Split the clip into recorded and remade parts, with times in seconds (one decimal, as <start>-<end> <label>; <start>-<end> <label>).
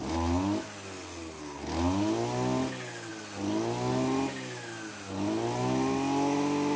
0.0-6.8 recorded